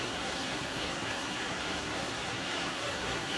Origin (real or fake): fake